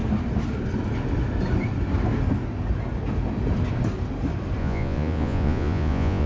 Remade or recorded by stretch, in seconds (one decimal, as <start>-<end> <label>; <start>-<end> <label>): 0.0-4.6 recorded; 4.6-6.3 remade